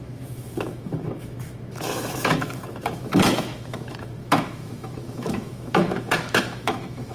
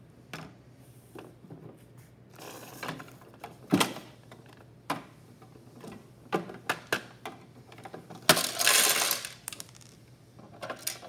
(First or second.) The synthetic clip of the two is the first